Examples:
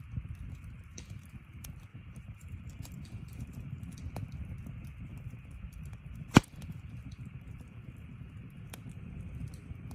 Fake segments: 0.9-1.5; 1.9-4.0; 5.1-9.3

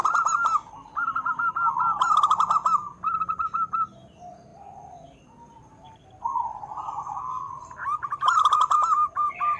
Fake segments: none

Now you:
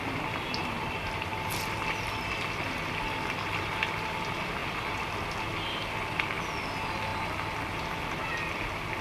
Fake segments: none

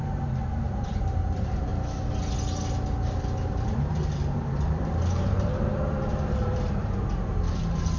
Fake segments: 0.0-1.7; 3.6-8.0

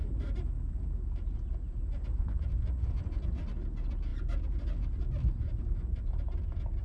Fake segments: 0.0-2.2

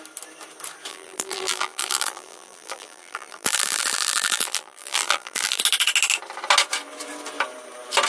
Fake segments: 0.9-5.6